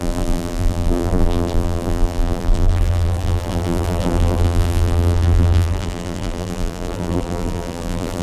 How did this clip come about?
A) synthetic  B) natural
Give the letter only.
A